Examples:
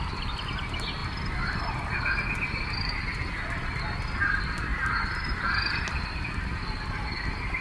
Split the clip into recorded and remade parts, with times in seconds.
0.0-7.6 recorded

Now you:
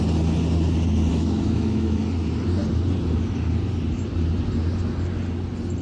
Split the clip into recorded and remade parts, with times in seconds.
0.0-1.1 recorded; 1.1-2.0 remade; 2.0-5.8 recorded

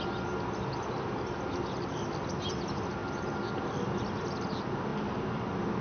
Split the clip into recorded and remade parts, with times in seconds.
0.0-5.8 recorded

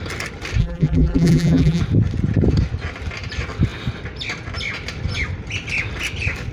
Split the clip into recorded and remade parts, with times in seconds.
0.0-0.6 recorded; 0.6-1.8 remade; 1.8-6.5 recorded